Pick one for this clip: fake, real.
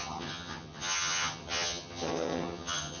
fake